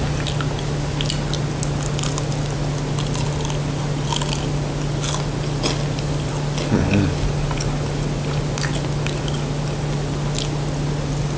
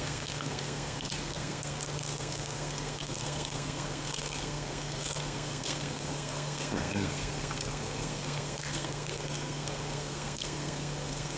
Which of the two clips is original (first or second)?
first